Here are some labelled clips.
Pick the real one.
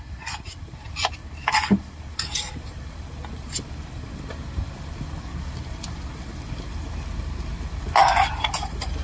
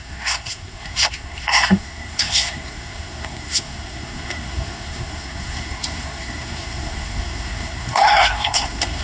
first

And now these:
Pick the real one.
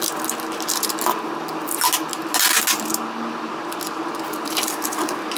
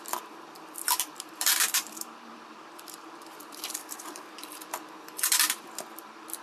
first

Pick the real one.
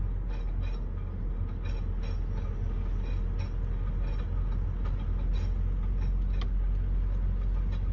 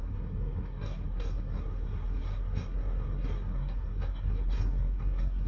first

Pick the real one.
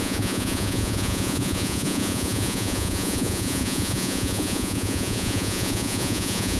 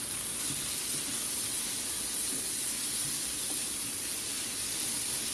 second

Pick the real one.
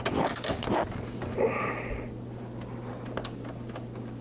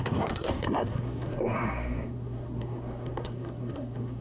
first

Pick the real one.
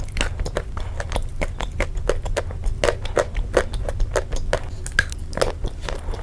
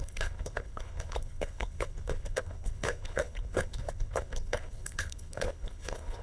first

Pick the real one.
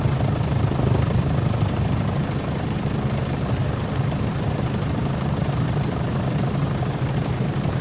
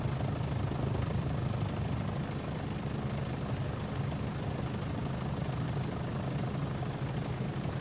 second